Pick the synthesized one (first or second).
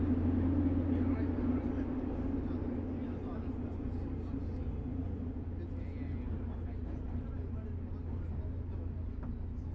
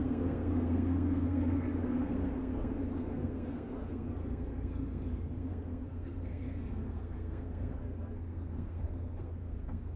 second